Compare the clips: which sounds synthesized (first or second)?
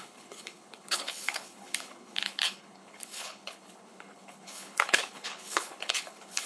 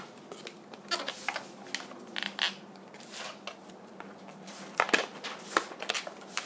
first